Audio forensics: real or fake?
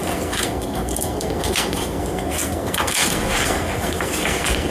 fake